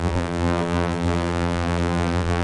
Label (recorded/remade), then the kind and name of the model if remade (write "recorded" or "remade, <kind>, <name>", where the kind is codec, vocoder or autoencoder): remade, vocoder, BigVGAN v2